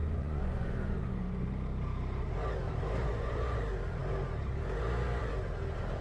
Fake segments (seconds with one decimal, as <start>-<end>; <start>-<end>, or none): 0.0-1.3; 3.0-3.6